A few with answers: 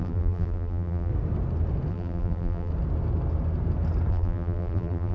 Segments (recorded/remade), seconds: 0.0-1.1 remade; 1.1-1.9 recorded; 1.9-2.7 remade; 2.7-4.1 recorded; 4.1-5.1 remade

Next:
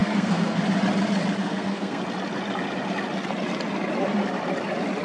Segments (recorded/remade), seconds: 0.0-0.6 remade; 0.6-1.4 recorded; 1.4-2.0 remade; 2.0-5.0 recorded